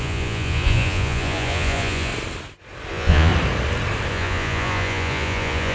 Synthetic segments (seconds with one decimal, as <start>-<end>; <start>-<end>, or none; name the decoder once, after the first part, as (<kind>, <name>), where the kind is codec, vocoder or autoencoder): 0.0-2.1 (vocoder, Vocos); 2.9-3.3; 4.1-5.7